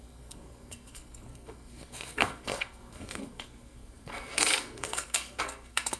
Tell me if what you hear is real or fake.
fake